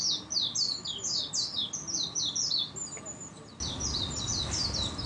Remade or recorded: recorded